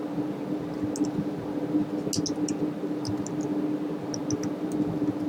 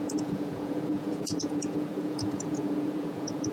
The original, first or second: first